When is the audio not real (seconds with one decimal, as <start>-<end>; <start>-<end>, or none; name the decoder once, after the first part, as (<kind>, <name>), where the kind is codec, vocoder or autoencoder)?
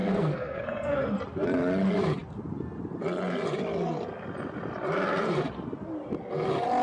0.0-1.2 (codec, SNAC)